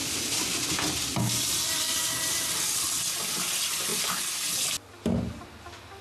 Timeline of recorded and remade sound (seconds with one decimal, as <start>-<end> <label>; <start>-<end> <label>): 0.0-6.0 recorded